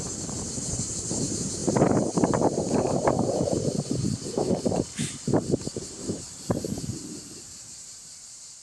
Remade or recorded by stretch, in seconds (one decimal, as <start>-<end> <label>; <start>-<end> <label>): 0.0-8.6 remade